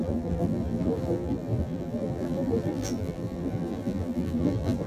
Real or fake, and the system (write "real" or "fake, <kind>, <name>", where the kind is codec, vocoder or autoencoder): fake, vocoder, BigVGAN v2